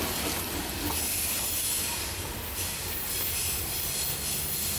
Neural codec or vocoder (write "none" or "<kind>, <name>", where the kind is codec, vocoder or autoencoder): none